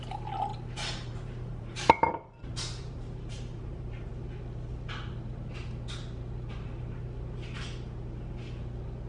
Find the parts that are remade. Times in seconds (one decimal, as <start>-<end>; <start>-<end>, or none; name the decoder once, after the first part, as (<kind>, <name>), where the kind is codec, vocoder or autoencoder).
0.5-4.1 (vocoder, BigVGAN v2)